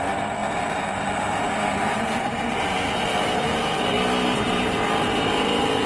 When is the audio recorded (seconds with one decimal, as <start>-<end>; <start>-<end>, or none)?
0.0-0.4; 3.9-5.9